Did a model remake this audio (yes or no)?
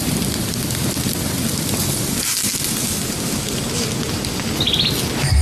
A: no